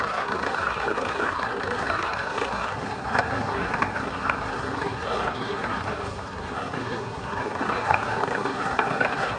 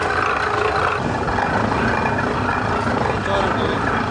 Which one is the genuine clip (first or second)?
second